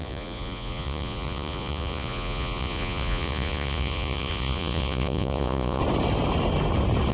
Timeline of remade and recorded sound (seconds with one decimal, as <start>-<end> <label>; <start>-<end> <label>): 0.0-5.8 remade; 5.8-7.1 recorded